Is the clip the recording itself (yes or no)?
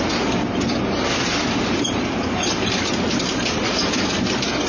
yes